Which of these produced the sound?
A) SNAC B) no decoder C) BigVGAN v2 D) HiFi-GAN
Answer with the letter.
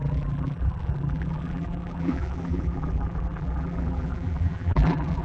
C